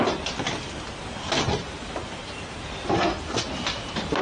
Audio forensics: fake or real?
real